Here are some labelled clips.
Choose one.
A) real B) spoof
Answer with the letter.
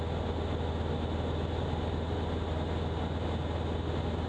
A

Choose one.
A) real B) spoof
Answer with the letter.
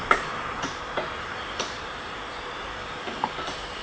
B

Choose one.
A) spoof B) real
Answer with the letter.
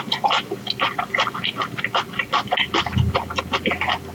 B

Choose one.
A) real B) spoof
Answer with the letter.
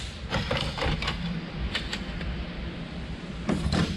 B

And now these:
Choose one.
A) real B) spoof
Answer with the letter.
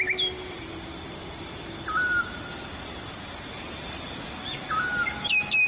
A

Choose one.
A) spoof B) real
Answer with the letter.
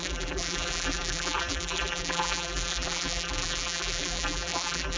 A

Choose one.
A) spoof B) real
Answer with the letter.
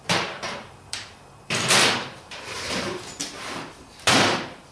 A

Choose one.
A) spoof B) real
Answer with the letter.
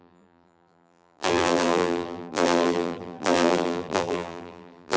A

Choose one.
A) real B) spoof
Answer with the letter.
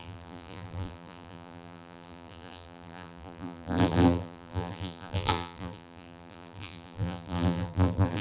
B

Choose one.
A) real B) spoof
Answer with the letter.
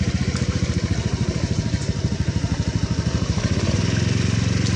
A